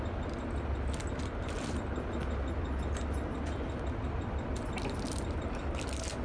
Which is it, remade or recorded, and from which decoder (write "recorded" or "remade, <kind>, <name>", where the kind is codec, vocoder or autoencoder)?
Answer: recorded